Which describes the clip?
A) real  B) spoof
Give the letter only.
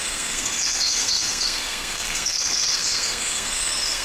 B